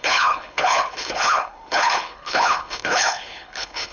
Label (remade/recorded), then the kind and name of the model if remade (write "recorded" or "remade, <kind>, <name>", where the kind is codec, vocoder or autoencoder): remade, codec, HILCodec